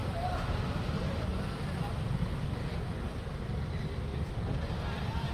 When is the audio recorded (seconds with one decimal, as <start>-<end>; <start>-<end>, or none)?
0.0-0.7; 1.3-2.8; 4.1-5.3